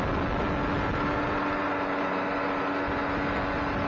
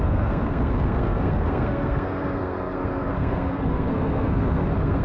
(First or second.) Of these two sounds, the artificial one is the second